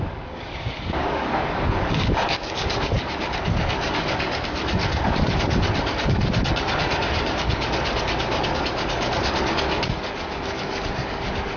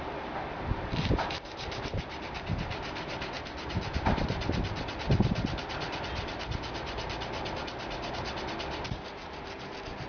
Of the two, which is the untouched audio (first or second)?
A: second